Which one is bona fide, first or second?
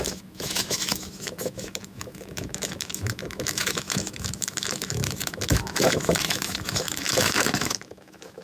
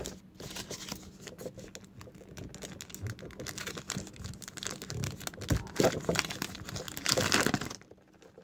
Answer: second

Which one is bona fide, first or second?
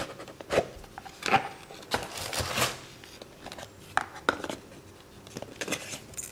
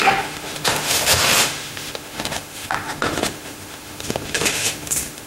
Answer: first